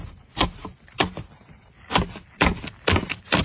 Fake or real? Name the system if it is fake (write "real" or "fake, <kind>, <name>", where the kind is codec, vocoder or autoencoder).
real